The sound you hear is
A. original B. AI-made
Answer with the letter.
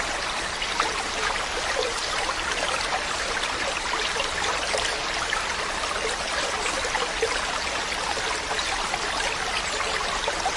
A